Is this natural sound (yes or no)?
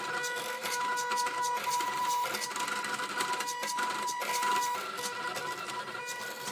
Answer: yes